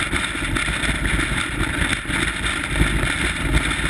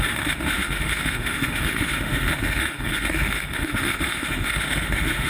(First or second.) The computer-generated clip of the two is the second